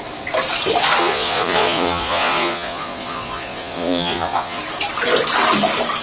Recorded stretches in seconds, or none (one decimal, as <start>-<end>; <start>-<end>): 0.0-1.0; 4.6-6.0